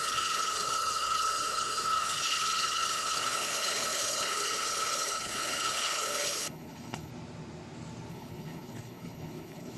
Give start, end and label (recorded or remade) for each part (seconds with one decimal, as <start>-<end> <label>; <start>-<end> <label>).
0.0-7.1 remade; 7.1-8.1 recorded; 8.1-9.8 remade